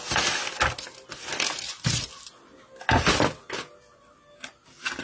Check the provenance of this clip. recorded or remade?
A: recorded